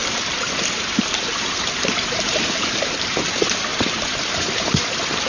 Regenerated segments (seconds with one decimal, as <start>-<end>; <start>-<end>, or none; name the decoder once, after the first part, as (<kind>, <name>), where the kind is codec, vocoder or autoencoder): 0.0-3.2 (vocoder, BigVGAN v2); 3.7-4.3